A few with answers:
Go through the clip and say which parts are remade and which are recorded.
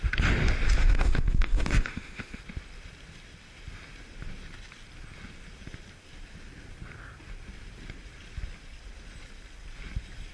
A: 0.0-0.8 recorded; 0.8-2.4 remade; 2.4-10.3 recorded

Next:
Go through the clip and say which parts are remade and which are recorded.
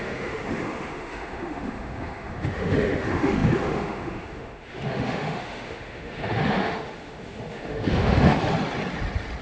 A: 0.0-8.4 remade; 8.4-9.4 recorded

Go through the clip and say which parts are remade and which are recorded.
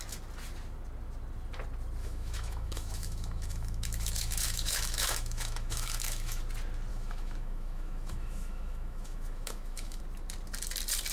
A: 0.0-2.0 recorded; 2.0-6.4 remade; 6.4-6.9 recorded; 6.9-10.0 remade; 10.0-11.1 recorded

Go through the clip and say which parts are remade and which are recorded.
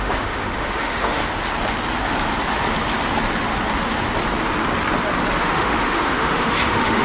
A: 0.0-1.2 remade; 1.2-5.4 recorded; 5.4-7.0 remade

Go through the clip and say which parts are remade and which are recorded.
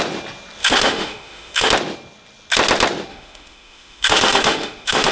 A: 0.0-0.6 recorded; 0.6-1.7 remade; 1.7-3.1 recorded; 3.1-5.1 remade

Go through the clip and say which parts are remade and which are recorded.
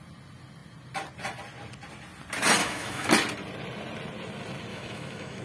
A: 0.0-2.6 recorded; 2.6-3.1 remade; 3.1-4.7 recorded; 4.7-5.4 remade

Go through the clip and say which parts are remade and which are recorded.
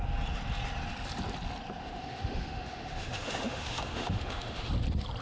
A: 0.0-1.8 recorded; 1.8-4.7 remade; 4.7-5.2 recorded